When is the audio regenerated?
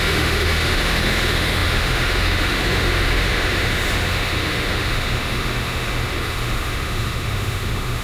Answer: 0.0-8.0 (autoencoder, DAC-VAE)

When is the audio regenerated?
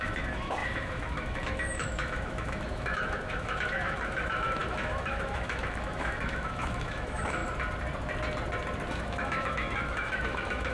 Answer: 0.0-7.4 (autoencoder, DAC-VAE); 8.9-10.7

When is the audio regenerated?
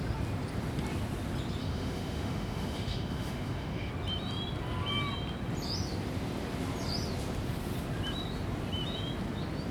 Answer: 1.6-3.9 (autoencoder, DAC-VAE)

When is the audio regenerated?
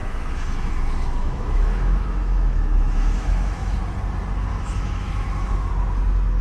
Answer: 0.0-3.8 (autoencoder, DAC-VAE); 4.5-5.7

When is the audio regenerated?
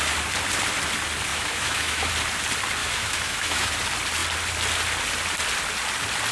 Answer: 1.3-2.1 (autoencoder, DAC-VAE); 2.8-3.7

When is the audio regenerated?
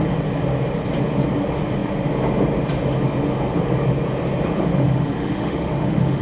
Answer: 4.7-6.2 (autoencoder, DAC-VAE)